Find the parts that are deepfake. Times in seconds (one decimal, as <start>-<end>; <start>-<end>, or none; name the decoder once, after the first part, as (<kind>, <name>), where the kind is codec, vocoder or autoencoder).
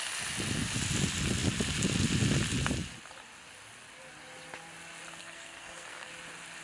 5.2-6.1 (codec, SNAC)